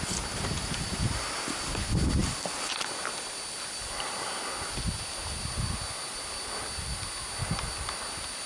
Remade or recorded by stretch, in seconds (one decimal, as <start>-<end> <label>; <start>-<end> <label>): 0.0-8.5 recorded